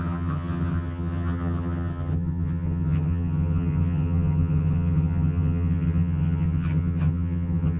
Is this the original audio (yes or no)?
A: no